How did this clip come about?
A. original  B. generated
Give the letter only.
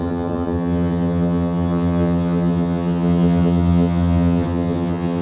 B